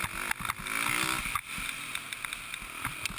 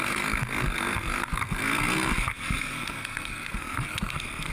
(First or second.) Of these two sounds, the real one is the first